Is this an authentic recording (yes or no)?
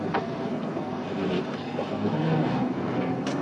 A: no